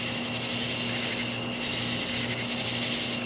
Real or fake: real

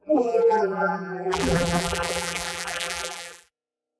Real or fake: fake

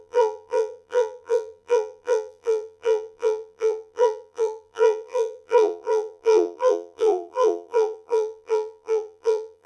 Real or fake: fake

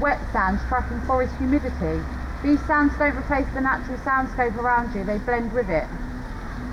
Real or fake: real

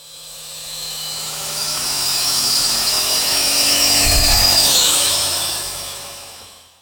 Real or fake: fake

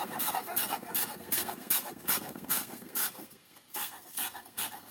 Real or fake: fake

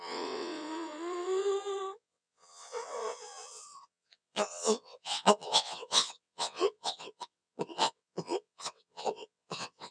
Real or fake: fake